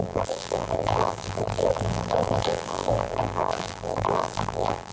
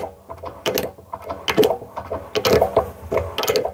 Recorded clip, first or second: second